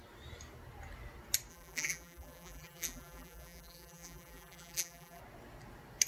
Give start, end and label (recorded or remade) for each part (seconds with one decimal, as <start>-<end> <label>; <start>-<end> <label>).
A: 0.0-1.5 recorded; 1.5-5.2 remade; 5.2-6.1 recorded